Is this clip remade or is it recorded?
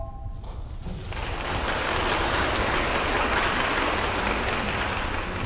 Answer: recorded